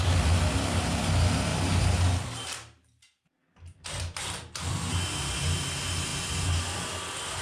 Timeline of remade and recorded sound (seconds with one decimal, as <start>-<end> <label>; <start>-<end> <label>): 0.0-1.5 recorded; 1.5-4.9 remade; 4.9-7.4 recorded